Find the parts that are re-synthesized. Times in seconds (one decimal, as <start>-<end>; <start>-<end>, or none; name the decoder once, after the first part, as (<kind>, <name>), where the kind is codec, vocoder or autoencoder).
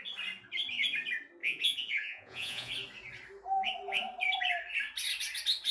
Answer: 1.4-2.7 (vocoder, Vocos)